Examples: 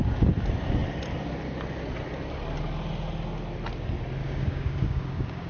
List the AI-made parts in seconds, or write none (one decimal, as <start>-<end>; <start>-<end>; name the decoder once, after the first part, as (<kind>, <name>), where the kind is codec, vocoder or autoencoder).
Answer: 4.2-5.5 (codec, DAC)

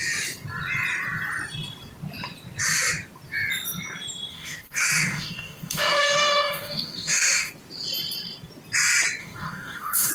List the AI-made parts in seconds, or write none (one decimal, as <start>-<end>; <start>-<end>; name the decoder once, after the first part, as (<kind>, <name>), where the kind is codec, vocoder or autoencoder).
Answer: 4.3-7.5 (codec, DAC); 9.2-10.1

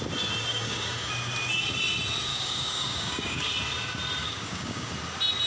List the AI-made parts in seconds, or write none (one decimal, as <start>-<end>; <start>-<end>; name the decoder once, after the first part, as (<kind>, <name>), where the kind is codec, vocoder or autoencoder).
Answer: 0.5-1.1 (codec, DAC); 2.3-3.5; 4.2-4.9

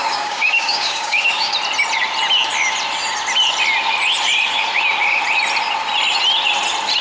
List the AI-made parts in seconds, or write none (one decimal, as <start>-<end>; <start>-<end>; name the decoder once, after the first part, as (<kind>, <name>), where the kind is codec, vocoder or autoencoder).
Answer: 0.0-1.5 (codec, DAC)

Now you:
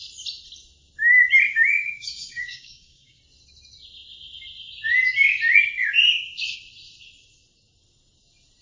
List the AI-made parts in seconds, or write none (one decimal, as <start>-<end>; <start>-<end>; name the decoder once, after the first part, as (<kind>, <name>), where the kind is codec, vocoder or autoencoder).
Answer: 1.5-3.2 (codec, DAC)

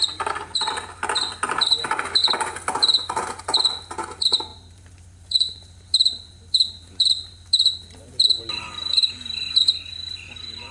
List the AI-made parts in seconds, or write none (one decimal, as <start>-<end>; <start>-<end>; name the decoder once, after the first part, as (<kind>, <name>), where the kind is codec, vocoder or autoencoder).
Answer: none